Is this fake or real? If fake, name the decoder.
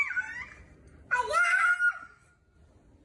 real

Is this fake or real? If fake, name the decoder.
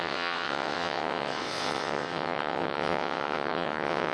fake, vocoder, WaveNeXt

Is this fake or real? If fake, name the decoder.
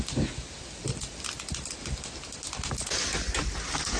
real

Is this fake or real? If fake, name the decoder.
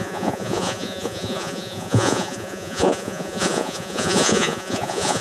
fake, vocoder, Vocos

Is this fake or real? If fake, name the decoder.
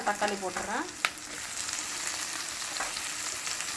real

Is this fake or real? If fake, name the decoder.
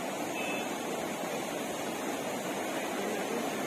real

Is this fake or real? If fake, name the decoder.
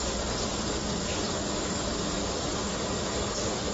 real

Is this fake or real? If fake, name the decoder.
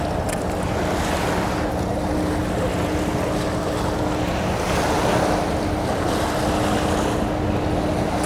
real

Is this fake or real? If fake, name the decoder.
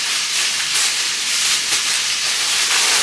real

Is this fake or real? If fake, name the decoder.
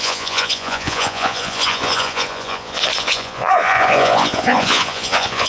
fake, vocoder, Vocos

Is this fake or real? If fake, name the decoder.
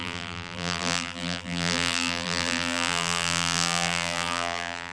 fake, vocoder, BigVGAN v2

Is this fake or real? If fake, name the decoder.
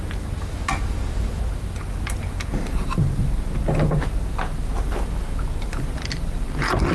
real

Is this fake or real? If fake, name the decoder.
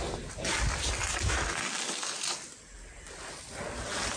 real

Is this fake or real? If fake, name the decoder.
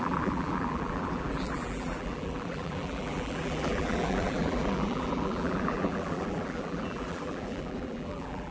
fake, vocoder, BigVGAN v2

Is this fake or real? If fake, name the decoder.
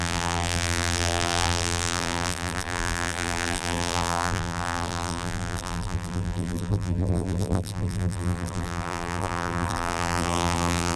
fake, vocoder, BigVGAN v2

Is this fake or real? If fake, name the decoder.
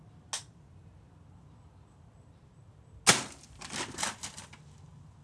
real